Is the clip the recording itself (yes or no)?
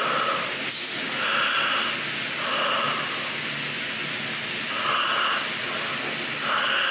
yes